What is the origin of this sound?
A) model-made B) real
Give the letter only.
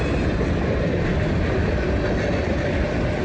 B